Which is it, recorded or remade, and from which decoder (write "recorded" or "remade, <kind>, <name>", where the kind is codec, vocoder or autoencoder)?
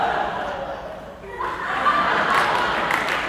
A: remade, vocoder, BigVGAN v2